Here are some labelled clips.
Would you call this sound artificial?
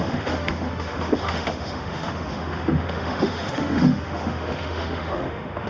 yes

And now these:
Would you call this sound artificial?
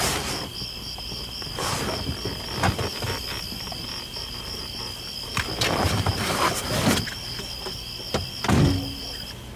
yes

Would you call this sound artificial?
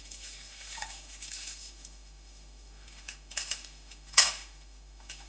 yes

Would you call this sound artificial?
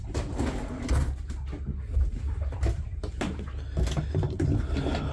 no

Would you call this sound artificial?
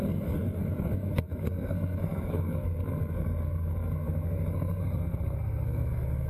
yes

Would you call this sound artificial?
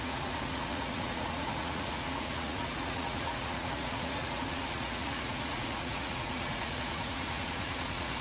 yes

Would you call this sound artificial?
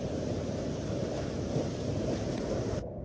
no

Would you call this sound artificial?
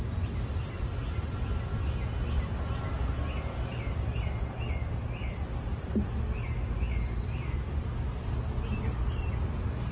no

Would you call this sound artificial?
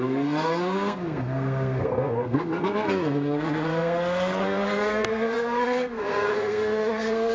yes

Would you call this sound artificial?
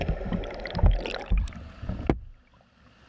no